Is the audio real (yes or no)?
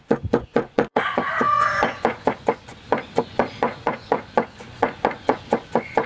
no